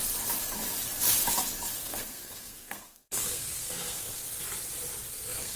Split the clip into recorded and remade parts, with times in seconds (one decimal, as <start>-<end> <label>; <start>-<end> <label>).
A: 0.0-1.8 recorded; 1.8-4.4 remade; 4.4-5.1 recorded; 5.1-5.6 remade